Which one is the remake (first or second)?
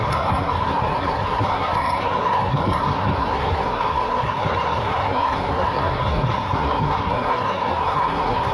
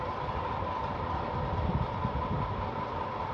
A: first